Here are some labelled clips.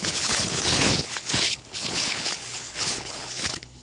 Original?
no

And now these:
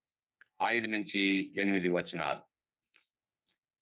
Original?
no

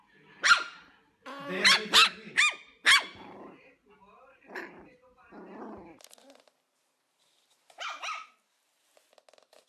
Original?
yes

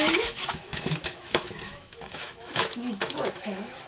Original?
no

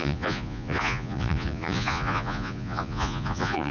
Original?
no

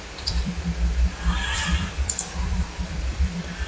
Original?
no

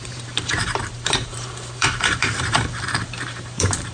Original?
no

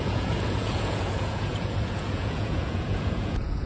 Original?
no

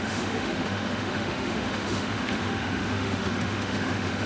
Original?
no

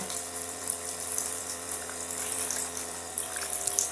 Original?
no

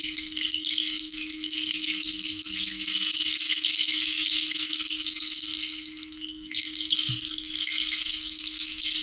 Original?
no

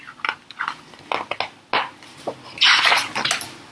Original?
yes